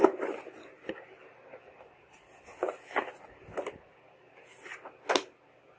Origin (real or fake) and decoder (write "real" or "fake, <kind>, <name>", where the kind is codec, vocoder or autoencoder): real